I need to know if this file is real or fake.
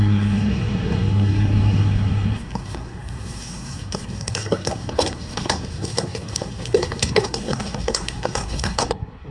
fake